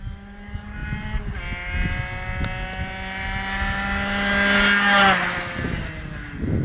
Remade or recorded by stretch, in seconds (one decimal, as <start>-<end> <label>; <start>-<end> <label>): 0.0-6.6 recorded